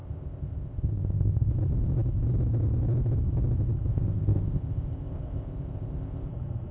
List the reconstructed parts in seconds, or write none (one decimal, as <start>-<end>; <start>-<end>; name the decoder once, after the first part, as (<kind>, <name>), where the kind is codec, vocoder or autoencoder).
0.0-1.5 (codec, ZipCodec); 3.9-6.3